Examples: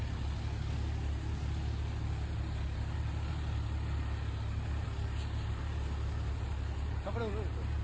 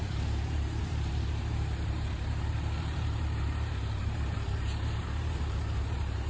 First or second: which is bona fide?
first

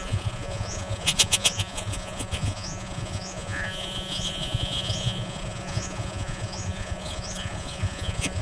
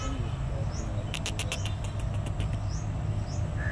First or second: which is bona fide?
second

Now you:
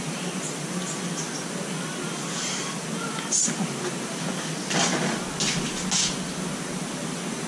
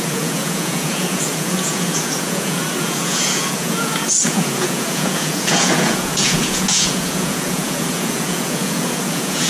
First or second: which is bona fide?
first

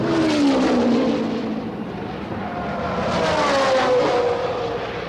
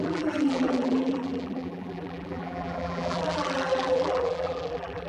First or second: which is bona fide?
first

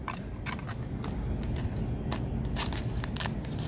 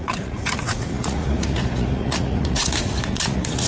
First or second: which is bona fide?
first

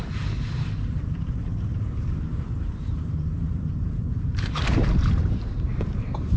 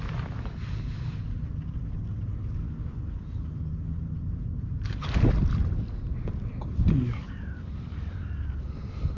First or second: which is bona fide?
second